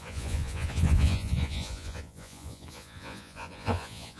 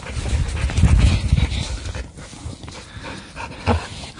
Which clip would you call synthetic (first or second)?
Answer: first